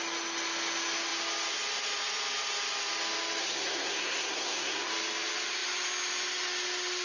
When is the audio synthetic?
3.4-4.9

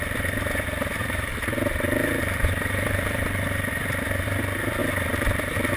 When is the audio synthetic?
1.0-3.2; 4.8-5.8